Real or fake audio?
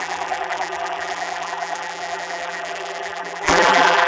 fake